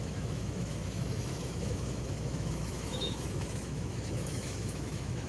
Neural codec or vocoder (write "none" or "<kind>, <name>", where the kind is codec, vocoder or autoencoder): autoencoder, DAC-VAE